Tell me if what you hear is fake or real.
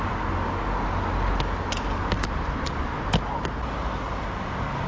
real